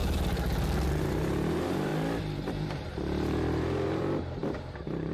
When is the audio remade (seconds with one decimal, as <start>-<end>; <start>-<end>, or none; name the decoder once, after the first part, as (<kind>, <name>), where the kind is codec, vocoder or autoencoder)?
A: 1.0-1.9 (vocoder, BigVGAN v2); 2.5-5.1